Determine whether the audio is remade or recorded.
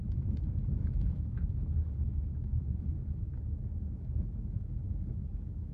remade